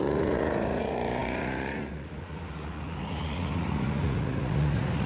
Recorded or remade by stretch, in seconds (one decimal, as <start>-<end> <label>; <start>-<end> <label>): 0.0-5.1 remade